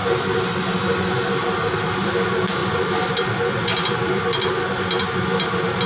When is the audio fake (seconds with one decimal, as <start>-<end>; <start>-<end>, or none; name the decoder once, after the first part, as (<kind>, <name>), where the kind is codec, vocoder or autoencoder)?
2.6-4.6 (vocoder, BigVGAN v2)